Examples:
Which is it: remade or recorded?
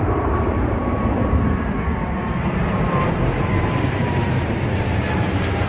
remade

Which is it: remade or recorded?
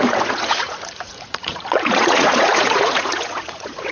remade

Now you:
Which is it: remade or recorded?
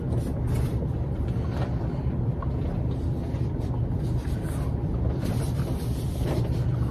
remade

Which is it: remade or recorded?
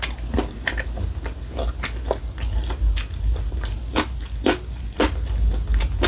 recorded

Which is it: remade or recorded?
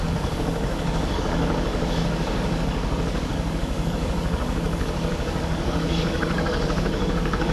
remade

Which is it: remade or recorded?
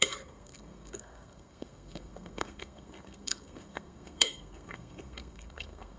remade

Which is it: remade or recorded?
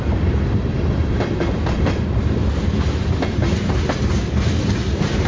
recorded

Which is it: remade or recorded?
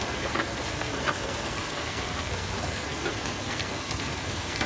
remade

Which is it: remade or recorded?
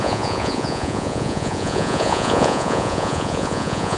remade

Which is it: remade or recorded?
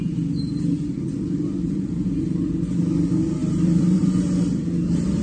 remade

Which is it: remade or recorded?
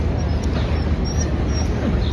recorded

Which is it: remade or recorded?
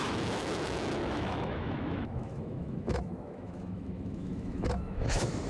remade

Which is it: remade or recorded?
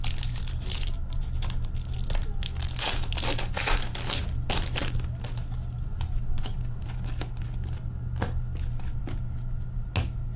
recorded